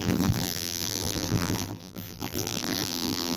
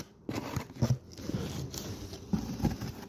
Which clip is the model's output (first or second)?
first